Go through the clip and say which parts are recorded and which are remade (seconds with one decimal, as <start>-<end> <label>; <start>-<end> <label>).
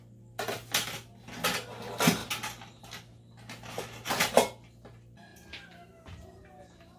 0.0-7.0 recorded